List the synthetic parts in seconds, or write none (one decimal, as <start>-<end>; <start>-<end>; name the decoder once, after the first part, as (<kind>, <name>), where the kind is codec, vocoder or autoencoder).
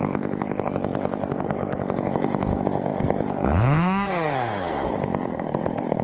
0.0-6.0 (codec, SNAC)